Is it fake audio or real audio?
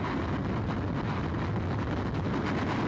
real